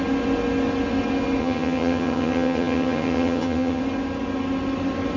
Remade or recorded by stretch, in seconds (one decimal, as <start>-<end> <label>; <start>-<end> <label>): 0.0-1.4 recorded; 1.4-3.8 remade; 3.8-5.2 recorded